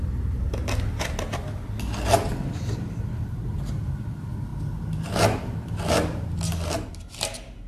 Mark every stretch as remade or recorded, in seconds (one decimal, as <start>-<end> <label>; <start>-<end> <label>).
0.0-7.7 recorded